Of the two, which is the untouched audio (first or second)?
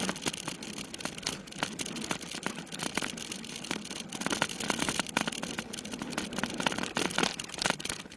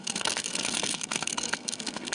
first